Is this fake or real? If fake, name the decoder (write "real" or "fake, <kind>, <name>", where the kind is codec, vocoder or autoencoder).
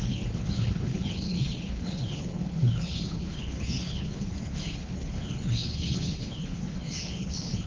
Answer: fake, codec, HILCodec